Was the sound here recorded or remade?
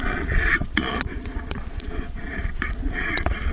remade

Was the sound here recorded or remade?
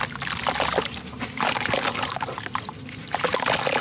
recorded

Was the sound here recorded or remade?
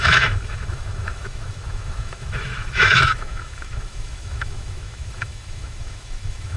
remade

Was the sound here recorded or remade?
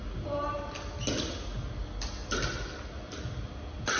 recorded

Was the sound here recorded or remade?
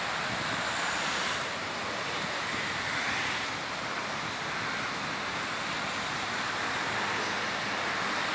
recorded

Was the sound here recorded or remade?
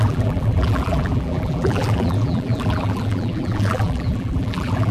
remade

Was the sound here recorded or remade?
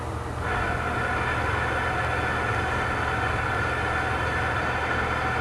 recorded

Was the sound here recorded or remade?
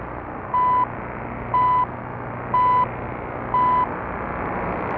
recorded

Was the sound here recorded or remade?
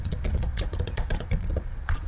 remade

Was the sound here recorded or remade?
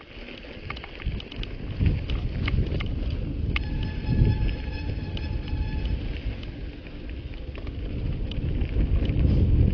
recorded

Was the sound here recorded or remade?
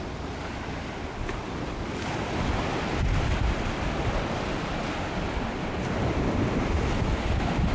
recorded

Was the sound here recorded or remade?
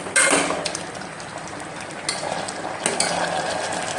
recorded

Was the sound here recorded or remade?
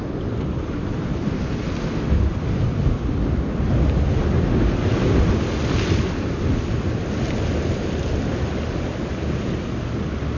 recorded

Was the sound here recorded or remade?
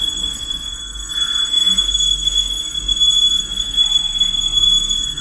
remade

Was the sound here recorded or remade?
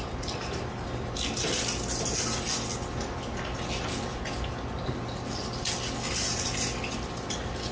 recorded